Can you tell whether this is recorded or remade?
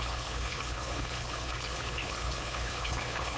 remade